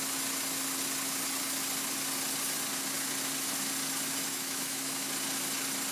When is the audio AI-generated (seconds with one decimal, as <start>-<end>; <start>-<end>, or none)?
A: 4.3-5.1